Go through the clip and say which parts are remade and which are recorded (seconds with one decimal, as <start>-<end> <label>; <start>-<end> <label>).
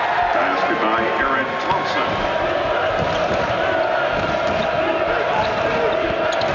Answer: 0.0-6.5 recorded